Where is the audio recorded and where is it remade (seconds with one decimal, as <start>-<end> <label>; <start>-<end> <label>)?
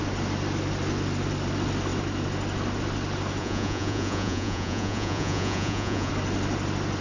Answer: 0.0-3.4 recorded; 3.4-6.1 remade; 6.1-7.0 recorded